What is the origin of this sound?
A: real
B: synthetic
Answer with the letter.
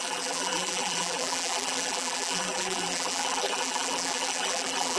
B